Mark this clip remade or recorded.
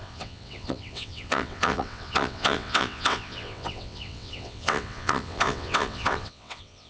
remade